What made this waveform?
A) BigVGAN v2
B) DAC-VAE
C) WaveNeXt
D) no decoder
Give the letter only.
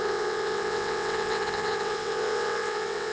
C